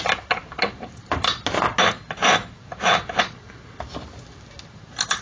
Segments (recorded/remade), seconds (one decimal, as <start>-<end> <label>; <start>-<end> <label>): 0.0-5.2 recorded